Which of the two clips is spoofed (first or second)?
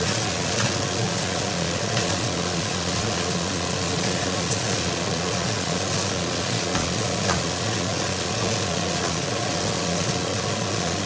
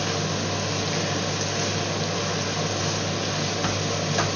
first